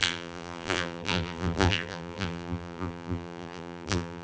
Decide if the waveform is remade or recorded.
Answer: remade